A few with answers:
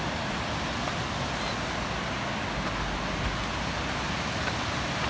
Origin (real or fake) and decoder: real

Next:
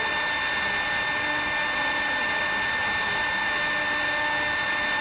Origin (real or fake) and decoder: real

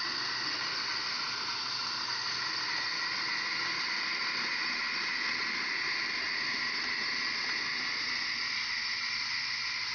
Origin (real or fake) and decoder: real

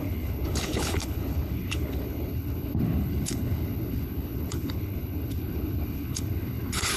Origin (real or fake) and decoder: fake, codec, HILCodec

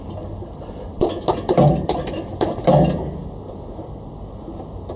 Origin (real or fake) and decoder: real